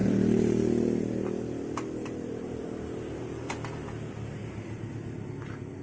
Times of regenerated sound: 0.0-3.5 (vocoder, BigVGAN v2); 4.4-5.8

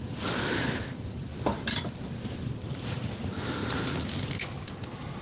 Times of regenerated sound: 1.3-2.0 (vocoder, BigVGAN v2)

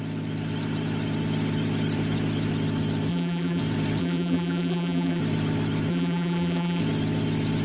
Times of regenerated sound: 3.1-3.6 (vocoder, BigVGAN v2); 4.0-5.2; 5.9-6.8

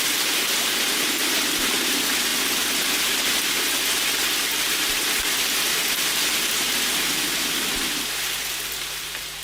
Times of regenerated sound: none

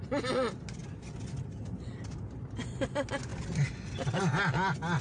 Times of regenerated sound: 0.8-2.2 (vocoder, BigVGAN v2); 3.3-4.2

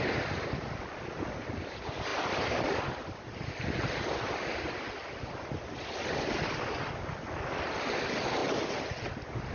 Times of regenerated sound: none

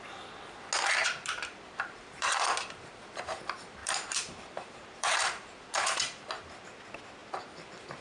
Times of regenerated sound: 1.0-2.8 (vocoder, BigVGAN v2); 3.8-6.6

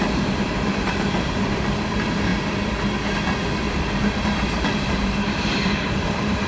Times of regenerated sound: 0.0-2.3 (vocoder, BigVGAN v2); 3.7-6.5